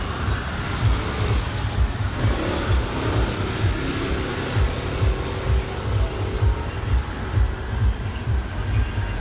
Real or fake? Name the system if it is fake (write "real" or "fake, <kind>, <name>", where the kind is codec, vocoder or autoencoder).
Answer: real